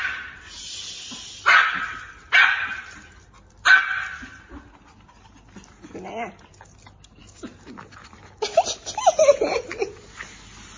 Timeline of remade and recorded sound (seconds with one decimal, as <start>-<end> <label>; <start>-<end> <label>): 0.0-10.8 recorded